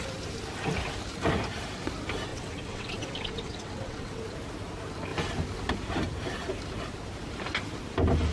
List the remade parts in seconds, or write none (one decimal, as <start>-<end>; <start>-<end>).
2.3-4.2